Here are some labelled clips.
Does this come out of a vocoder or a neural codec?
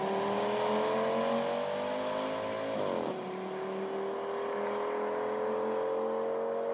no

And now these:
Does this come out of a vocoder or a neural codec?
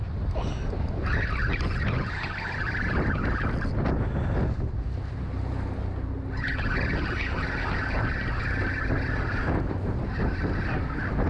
no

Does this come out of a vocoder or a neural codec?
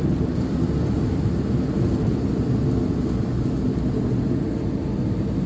no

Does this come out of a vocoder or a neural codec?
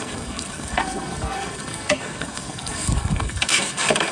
yes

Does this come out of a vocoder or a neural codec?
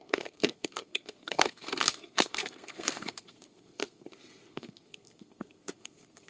yes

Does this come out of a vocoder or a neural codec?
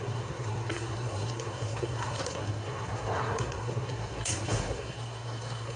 yes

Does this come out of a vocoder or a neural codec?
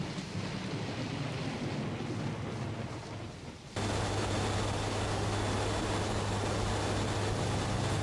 no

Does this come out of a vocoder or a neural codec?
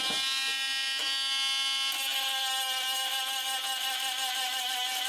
no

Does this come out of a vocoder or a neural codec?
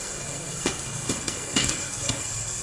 yes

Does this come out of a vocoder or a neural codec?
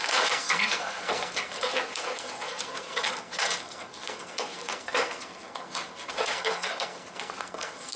yes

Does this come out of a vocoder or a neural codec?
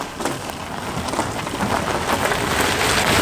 no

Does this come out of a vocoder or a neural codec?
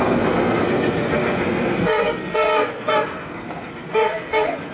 yes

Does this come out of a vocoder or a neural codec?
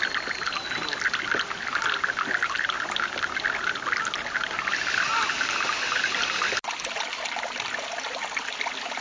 no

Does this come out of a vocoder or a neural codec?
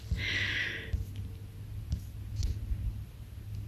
no